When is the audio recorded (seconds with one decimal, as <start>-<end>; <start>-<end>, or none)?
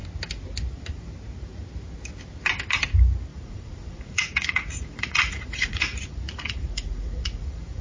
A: 0.0-3.3